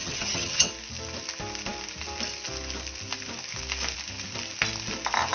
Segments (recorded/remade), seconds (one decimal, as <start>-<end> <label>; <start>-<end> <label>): 0.0-0.7 remade; 0.7-5.3 recorded